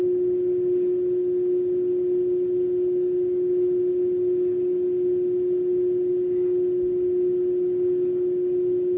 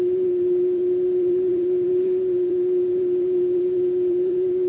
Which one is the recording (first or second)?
first